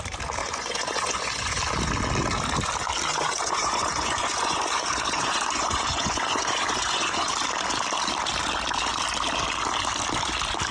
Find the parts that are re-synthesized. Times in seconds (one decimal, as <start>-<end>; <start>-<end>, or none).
0.4-1.6; 3.1-7.3